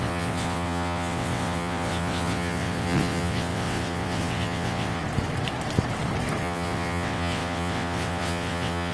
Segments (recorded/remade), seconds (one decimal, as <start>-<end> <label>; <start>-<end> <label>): 0.0-5.0 remade; 5.0-6.4 recorded; 6.4-8.9 remade